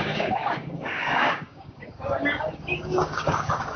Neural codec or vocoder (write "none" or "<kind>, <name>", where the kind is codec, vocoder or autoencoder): codec, DAC